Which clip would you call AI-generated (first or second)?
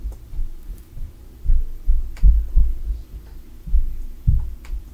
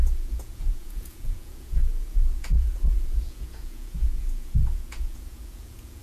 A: second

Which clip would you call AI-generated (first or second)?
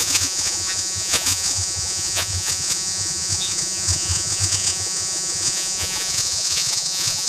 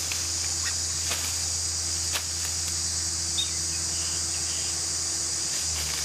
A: first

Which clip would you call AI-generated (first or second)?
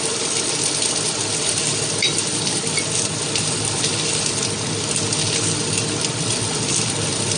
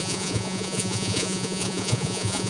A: second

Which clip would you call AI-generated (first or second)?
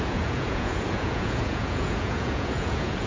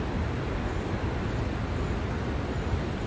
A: first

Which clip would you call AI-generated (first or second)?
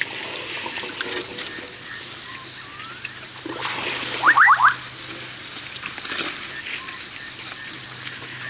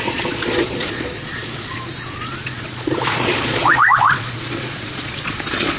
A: second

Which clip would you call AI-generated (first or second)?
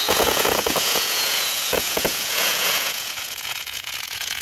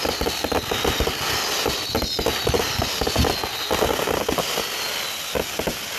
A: first